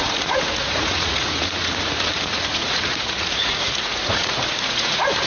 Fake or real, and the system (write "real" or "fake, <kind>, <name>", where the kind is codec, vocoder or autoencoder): fake, vocoder, Vocos